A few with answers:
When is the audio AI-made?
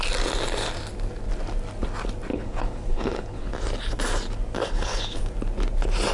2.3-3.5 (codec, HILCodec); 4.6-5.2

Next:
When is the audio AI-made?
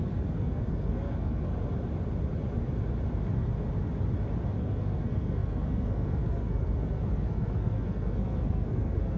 0.0-1.5 (codec, SNAC); 4.6-9.2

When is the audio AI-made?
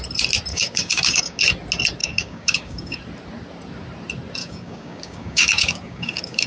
0.5-1.4 (codec, DAC); 2.0-3.0; 4.4-6.5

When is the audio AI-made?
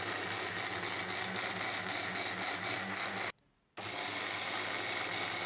none